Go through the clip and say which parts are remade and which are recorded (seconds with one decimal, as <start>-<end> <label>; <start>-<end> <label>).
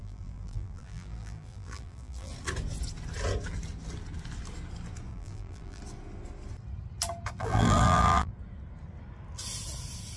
0.0-2.3 remade; 2.3-5.1 recorded; 5.1-5.8 remade; 5.8-7.4 recorded; 7.4-8.3 remade; 8.3-10.2 recorded